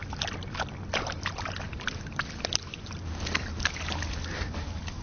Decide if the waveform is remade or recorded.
recorded